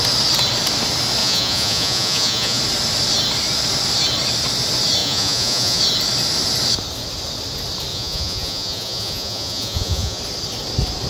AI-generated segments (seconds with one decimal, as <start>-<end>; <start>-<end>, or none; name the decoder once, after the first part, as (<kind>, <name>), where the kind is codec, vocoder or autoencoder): 1.2-2.6 (vocoder, Vocos); 5.0-5.8; 7.9-10.2